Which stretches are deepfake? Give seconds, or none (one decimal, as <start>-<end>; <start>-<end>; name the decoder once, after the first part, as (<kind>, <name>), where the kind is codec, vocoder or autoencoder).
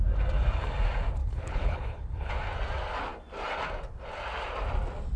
1.2-2.3 (codec, HILCodec)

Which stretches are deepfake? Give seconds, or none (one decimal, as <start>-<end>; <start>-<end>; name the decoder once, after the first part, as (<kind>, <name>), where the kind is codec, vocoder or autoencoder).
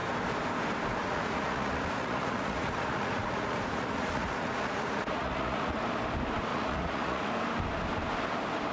1.0-5.8 (vocoder, Vocos); 6.5-7.3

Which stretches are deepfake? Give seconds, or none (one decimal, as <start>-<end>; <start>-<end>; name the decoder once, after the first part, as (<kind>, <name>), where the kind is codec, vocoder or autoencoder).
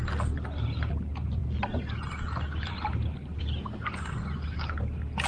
none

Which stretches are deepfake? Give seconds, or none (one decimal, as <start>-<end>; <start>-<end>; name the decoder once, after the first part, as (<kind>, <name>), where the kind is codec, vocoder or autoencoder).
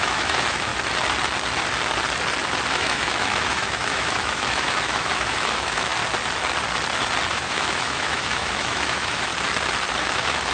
0.0-0.7 (autoencoder, DAC-VAE); 2.7-5.9; 7.3-9.3; 10.0-10.5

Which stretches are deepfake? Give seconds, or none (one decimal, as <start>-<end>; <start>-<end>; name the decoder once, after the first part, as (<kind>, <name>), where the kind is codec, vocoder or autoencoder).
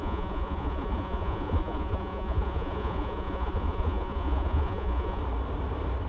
0.0-5.2 (vocoder, Vocos)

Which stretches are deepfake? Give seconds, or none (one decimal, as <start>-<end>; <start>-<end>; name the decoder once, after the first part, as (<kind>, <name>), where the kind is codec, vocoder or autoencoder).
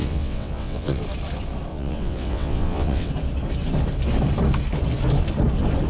0.0-1.0 (vocoder, WaveNeXt); 1.7-3.1